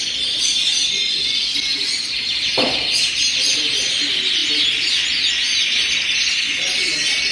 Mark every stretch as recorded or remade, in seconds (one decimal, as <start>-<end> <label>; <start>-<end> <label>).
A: 0.0-7.3 recorded